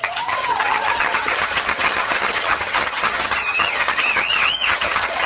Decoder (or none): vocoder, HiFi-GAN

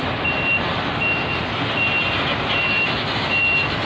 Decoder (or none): none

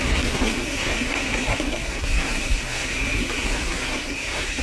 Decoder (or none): codec, SNAC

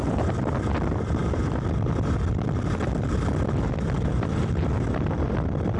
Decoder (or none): none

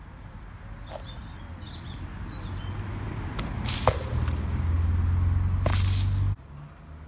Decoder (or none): none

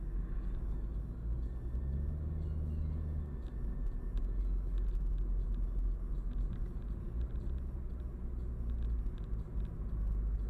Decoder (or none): none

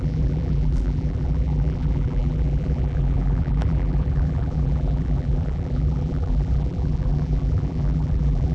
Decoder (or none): vocoder, BigVGAN v2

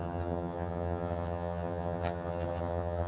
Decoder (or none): vocoder, HiFi-GAN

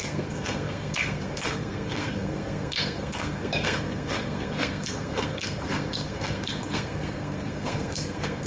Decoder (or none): codec, SNAC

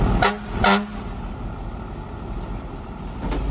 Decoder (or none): none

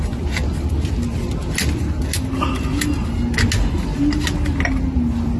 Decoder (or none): none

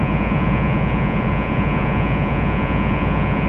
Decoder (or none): vocoder, Vocos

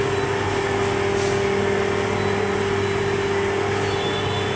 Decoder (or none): none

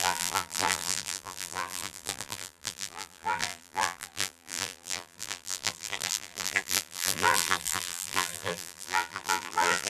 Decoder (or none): vocoder, BigVGAN v2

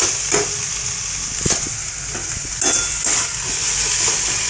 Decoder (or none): none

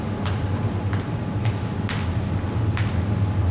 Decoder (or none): none